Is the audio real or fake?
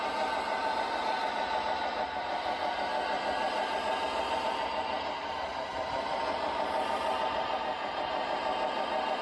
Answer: real